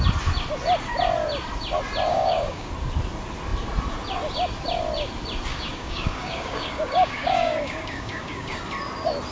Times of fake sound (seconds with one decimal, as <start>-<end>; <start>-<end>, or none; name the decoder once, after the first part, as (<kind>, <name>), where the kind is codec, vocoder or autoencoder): 2.1-2.7 (codec, DAC); 5.5-8.6

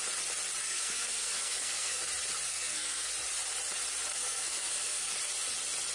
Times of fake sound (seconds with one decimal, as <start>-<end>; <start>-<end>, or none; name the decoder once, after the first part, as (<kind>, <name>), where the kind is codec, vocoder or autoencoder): 0.6-2.0 (codec, SNAC); 2.5-3.1; 4.1-5.1

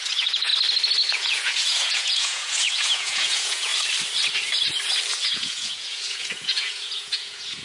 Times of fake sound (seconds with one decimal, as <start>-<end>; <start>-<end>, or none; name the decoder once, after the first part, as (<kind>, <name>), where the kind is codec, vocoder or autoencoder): 0.0-0.5 (vocoder, Vocos); 1.1-3.7; 5.2-7.6

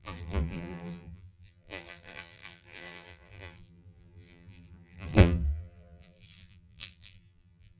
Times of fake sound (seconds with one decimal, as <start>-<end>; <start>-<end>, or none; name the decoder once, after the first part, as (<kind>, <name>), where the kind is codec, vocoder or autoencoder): 0.0-7.8 (vocoder, BigVGAN v2)

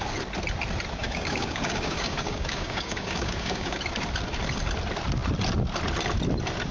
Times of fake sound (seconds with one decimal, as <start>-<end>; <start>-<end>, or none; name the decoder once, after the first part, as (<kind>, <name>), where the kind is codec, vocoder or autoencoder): 1.0-3.8 (codec, DAC)